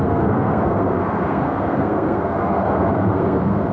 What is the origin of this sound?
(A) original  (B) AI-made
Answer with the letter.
B